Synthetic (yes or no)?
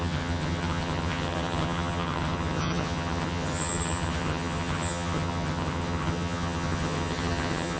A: yes